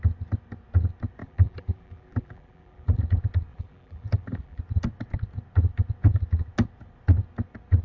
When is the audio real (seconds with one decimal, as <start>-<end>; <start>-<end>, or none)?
0.0-1.2; 3.0-3.5; 4.6-7.8